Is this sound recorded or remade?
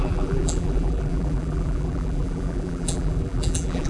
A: remade